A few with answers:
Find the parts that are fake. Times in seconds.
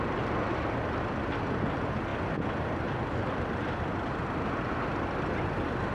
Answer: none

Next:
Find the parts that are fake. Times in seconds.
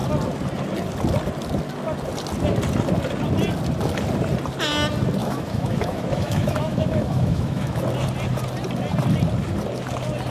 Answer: 5.2-7.8 (autoencoder, DAC-VAE)